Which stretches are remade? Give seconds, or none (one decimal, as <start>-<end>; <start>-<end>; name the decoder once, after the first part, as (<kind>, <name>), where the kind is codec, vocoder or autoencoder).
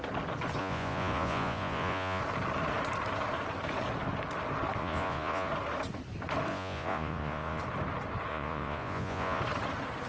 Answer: 0.6-2.2 (vocoder, Vocos); 4.8-5.5; 6.5-7.6; 8.3-9.4